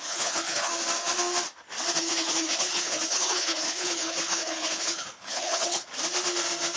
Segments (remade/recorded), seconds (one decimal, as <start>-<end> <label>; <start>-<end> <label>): 0.0-0.7 remade; 0.7-2.0 recorded; 2.0-5.9 remade; 5.9-6.8 recorded